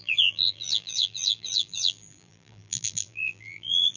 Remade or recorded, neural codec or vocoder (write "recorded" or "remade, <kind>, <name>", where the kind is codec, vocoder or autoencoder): remade, vocoder, BigVGAN v2